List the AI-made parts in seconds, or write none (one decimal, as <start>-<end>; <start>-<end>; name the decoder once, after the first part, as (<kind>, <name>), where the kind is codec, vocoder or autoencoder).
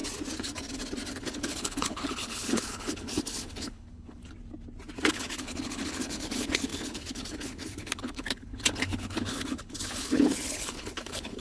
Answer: 1.1-4.2 (codec, HILCodec); 5.1-11.4